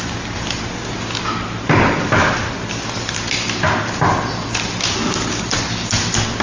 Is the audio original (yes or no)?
yes